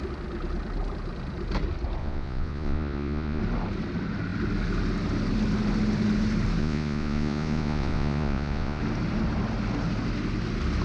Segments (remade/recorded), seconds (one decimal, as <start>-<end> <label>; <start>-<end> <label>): 0.0-2.0 recorded; 2.0-3.4 remade; 3.4-6.6 recorded; 6.6-8.8 remade; 8.8-10.8 recorded